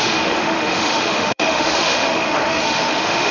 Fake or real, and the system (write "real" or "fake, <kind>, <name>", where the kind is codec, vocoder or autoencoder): fake, autoencoder, DAC-VAE